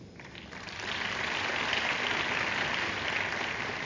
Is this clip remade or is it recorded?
recorded